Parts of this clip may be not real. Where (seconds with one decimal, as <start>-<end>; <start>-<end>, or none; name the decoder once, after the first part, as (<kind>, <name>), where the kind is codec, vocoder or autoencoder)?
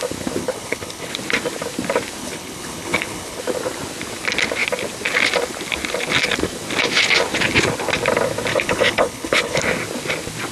0.4-1.1 (codec, HILCodec); 2.2-3.4; 8.5-9.6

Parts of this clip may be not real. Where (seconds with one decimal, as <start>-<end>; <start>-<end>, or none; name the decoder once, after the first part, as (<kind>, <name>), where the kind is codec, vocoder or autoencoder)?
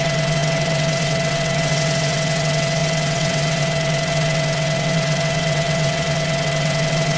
0.0-7.2 (vocoder, WaveNeXt)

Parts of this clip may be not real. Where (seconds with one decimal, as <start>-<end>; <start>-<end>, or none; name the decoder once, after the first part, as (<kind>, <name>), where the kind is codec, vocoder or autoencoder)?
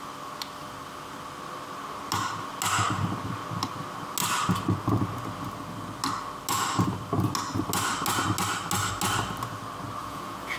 10.0-10.6 (vocoder, Vocos)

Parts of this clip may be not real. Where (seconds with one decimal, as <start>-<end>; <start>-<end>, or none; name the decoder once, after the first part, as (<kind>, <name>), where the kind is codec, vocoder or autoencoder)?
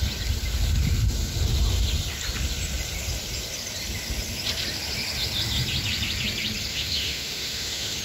6.7-8.0 (autoencoder, DAC-VAE)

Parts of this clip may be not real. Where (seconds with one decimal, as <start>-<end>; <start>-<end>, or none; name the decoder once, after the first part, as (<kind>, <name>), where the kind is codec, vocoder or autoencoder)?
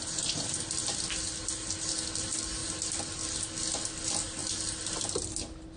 none